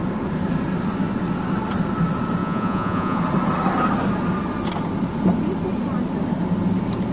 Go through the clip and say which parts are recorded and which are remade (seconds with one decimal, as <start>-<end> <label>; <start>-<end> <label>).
0.0-2.4 recorded; 2.4-3.2 remade; 3.2-7.1 recorded